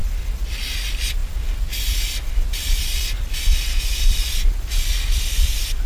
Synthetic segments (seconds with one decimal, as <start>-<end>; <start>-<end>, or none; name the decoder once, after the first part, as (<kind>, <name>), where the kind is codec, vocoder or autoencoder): none